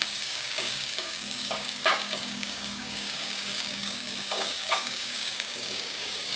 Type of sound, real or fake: fake